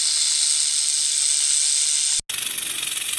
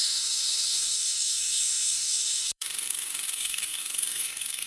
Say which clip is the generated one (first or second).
second